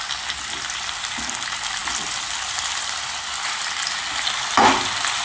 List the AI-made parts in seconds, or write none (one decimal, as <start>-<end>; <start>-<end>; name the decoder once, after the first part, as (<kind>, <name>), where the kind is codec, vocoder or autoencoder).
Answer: none